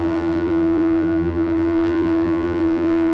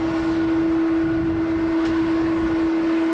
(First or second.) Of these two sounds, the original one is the second